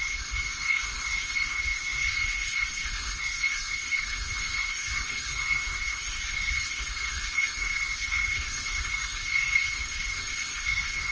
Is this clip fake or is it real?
fake